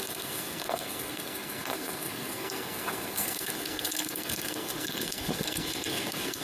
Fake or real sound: fake